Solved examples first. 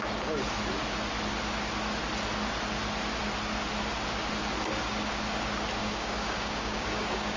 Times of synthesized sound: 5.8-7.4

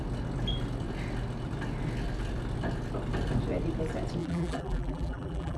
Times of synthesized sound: 4.2-5.6

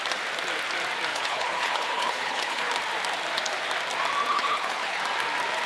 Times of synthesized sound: 1.1-2.7; 4.3-5.0

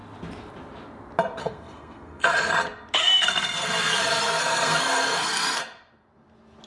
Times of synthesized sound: 1.4-2.5; 3.0-5.6

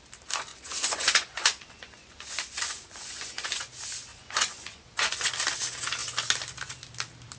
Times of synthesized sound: 0.5-3.6; 4.1-5.3

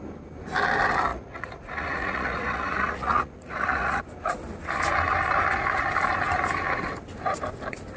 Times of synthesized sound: 1.1-4.0